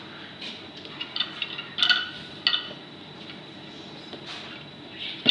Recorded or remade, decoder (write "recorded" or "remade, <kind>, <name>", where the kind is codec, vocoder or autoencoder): recorded